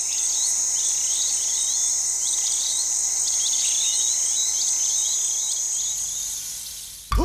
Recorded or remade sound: recorded